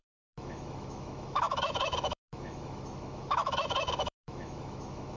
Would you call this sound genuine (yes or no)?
no